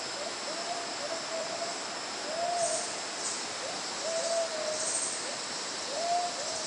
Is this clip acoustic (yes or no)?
yes